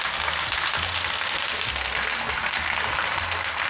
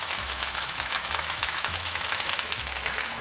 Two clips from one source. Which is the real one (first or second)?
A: first